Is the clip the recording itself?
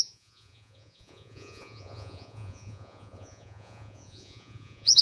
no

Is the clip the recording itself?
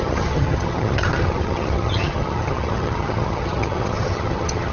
no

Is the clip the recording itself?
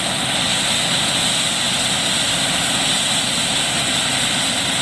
yes